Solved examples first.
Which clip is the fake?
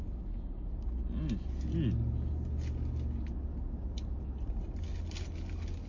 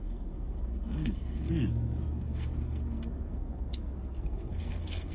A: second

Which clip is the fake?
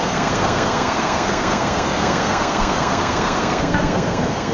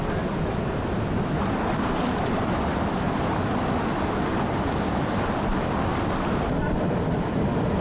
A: first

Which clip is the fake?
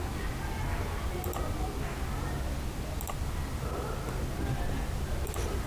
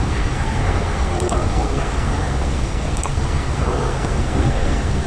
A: second